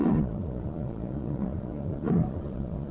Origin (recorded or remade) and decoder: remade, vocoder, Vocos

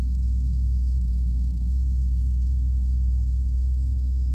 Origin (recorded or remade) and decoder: remade, codec, SNAC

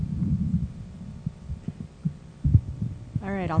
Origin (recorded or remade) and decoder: recorded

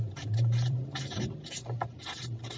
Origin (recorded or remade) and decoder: remade, vocoder, BigVGAN v2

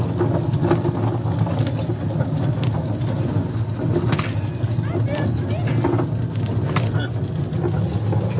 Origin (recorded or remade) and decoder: recorded